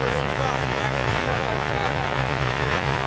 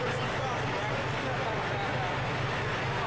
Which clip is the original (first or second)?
second